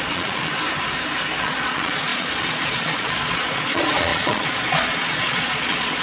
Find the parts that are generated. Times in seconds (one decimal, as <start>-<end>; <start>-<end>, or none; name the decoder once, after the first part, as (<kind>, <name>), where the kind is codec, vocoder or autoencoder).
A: 0.0-0.5 (vocoder, Vocos); 1.4-6.0